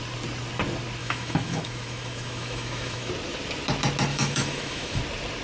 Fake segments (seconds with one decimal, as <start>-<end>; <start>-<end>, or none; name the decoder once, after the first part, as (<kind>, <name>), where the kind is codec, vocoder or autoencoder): 1.0-3.1 (autoencoder, DAC-VAE); 4.1-5.0